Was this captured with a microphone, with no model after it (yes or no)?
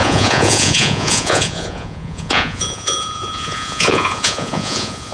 no